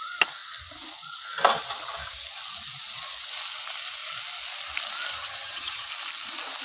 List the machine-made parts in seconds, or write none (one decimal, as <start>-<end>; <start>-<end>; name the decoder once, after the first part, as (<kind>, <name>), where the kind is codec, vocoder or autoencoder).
5.1-5.9 (vocoder, HiFi-GAN)

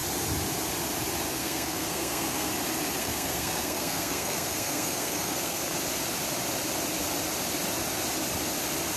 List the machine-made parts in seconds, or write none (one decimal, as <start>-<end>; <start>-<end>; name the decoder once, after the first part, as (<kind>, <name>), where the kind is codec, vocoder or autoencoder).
1.4-2.5 (codec, SNAC); 3.0-5.6

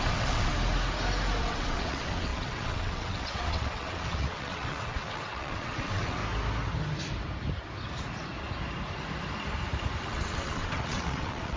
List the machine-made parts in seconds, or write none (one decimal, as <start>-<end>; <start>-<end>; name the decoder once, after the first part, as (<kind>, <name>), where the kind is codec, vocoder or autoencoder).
0.0-0.5 (vocoder, WaveNeXt); 1.4-6.2; 10.0-11.6

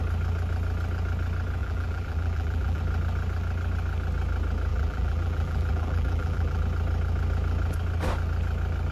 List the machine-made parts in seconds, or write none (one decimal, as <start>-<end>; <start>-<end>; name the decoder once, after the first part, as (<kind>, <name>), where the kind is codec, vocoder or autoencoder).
1.6-2.8 (vocoder, BigVGAN v2); 4.7-6.6

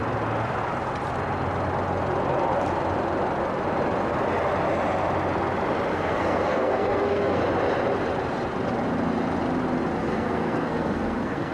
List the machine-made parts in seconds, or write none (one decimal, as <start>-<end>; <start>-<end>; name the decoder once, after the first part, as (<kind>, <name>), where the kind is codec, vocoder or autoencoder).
5.9-7.4 (codec, SNAC); 10.0-11.5

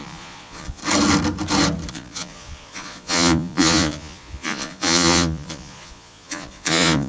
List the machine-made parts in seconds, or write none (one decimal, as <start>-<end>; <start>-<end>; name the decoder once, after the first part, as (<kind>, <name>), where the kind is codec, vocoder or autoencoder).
0.0-0.8 (vocoder, Vocos); 1.9-7.1

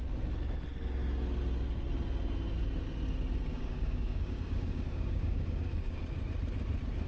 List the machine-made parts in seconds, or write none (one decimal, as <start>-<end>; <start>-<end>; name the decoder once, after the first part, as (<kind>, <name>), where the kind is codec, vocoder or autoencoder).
3.5-6.0 (codec, DAC)

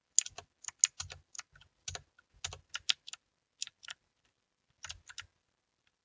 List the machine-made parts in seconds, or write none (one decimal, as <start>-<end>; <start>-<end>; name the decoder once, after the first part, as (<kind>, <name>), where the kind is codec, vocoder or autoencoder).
none